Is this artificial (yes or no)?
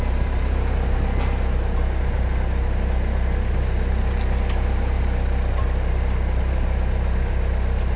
no